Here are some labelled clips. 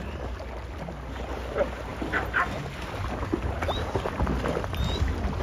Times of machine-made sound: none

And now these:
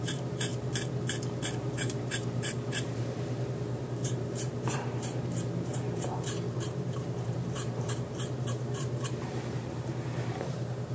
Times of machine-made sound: 0.0-0.5 (vocoder, BigVGAN v2); 1.6-10.9

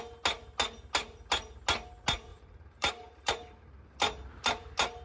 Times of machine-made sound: 2.3-3.3 (vocoder, BigVGAN v2)

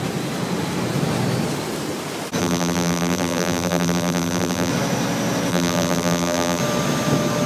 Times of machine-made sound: 2.4-4.7 (vocoder, BigVGAN v2); 5.5-6.6

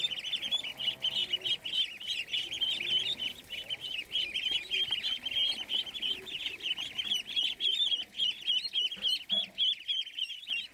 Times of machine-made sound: none

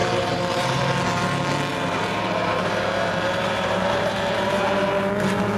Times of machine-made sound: 0.0-0.8 (vocoder, BigVGAN v2); 1.7-5.1

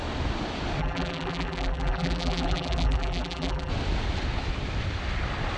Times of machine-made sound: 0.8-3.7 (vocoder, BigVGAN v2)

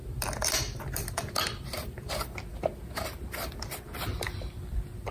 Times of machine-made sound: 0.0-5.1 (vocoder, BigVGAN v2)